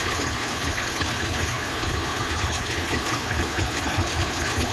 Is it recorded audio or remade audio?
remade